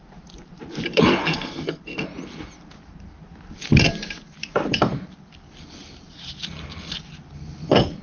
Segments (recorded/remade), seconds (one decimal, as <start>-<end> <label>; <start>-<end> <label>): 0.0-1.2 recorded; 1.2-1.8 remade; 1.8-8.0 recorded